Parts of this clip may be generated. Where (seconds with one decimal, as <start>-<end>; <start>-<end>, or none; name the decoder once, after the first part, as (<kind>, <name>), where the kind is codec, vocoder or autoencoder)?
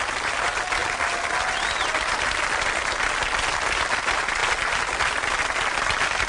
none